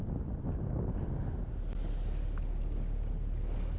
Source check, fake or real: real